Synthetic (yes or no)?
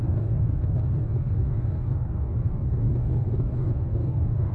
yes